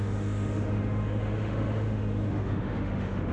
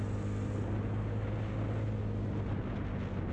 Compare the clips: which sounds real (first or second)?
second